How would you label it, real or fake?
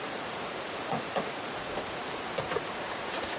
fake